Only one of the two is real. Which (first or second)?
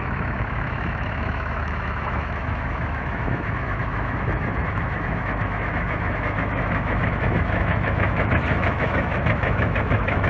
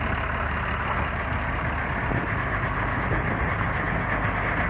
second